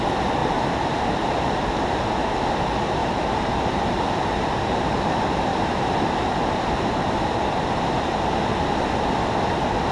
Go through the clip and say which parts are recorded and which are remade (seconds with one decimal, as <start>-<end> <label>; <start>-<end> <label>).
0.0-0.4 recorded; 0.4-1.8 remade; 1.8-3.0 recorded; 3.0-5.0 remade; 5.0-5.5 recorded; 5.5-7.1 remade; 7.1-9.9 recorded